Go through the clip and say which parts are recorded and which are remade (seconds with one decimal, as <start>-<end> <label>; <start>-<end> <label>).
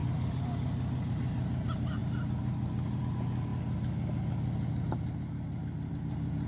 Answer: 0.0-6.5 recorded